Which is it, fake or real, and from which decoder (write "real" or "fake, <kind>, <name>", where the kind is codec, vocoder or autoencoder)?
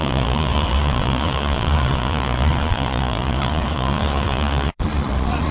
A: fake, vocoder, Vocos